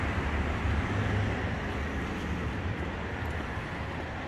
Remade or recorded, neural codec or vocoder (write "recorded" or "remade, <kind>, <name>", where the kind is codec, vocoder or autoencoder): recorded